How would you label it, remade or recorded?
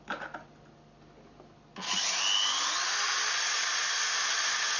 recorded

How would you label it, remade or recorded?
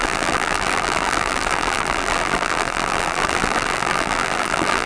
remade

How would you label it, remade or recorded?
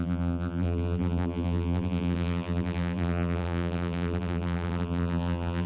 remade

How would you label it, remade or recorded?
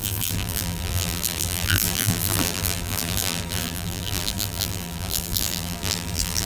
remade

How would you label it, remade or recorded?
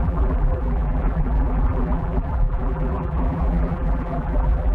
remade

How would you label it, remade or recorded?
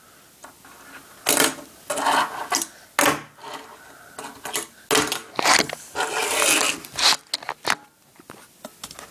recorded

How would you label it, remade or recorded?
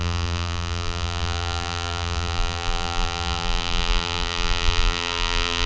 remade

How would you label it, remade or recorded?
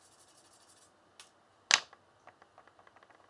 recorded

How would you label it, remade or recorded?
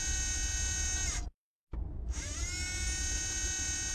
recorded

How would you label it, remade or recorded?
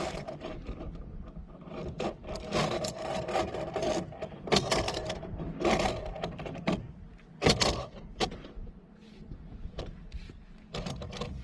remade